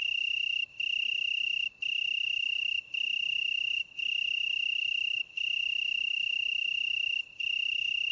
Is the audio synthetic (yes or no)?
no